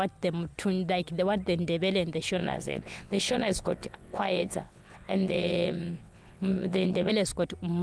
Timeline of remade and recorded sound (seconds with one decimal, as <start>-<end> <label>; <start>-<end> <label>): 0.0-2.4 recorded; 2.4-7.1 remade; 7.1-7.8 recorded